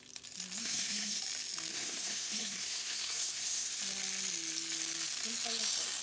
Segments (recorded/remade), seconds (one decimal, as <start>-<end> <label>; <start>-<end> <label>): 0.0-0.6 recorded; 0.6-1.2 remade; 1.2-1.7 recorded; 1.7-3.8 remade; 3.8-6.0 recorded